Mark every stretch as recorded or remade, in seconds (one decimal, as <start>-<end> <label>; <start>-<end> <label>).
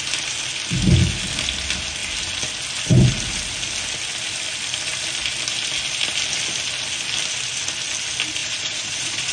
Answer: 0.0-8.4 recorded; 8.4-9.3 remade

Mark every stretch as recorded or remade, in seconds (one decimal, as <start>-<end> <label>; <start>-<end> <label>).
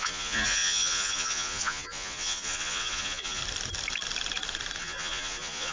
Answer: 0.0-3.4 remade; 3.4-4.8 recorded; 4.8-5.7 remade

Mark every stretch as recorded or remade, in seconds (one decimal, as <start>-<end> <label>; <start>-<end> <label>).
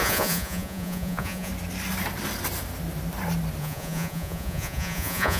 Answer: 0.0-1.5 remade; 1.5-3.6 recorded; 3.6-5.4 remade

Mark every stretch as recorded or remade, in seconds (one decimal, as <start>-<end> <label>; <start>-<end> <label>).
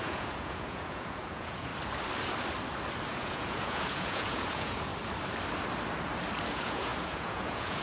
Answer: 0.0-1.7 remade; 1.7-3.1 recorded; 3.1-4.9 remade; 4.9-6.5 recorded; 6.5-7.8 remade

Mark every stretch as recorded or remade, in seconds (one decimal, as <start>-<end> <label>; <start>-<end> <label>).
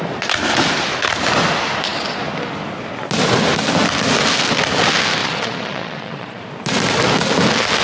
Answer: 0.0-5.2 recorded; 5.2-6.4 remade; 6.4-7.8 recorded